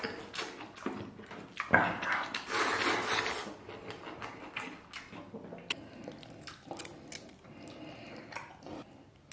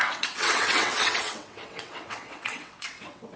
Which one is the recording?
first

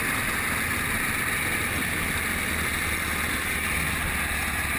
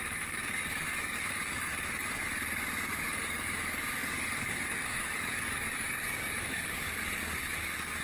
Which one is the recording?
first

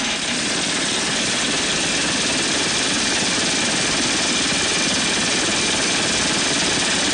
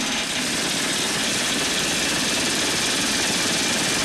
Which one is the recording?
second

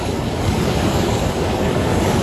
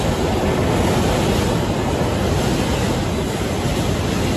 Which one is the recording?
second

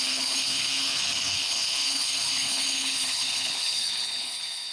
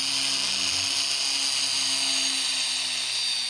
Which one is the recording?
second